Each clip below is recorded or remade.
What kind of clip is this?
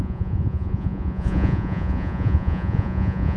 remade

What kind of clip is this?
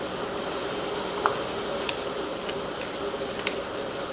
recorded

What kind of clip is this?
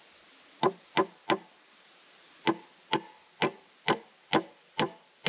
recorded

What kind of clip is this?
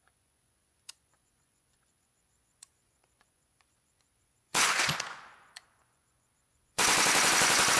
remade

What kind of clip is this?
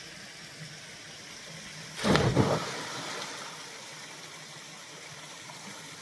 recorded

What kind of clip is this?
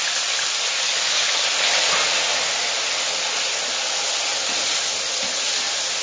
recorded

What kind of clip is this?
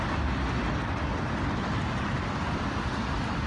recorded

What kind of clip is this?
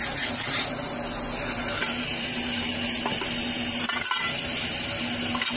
recorded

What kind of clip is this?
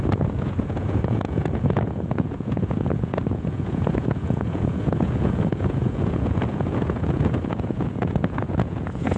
remade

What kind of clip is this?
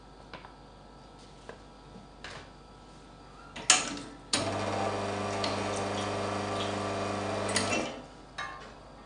recorded